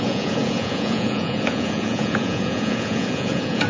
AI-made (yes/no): yes